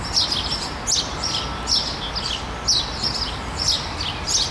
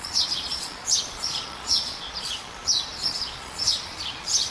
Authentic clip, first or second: first